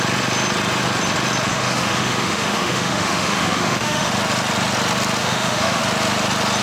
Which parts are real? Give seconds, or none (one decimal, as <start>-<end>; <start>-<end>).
0.0-1.5; 4.1-5.2; 5.8-6.6